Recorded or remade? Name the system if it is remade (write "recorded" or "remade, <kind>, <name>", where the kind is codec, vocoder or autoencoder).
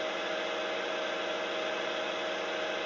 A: recorded